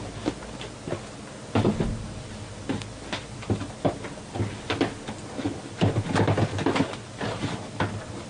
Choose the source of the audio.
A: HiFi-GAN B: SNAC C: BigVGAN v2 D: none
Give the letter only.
D